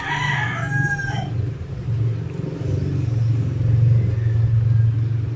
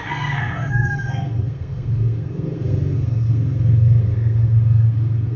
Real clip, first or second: first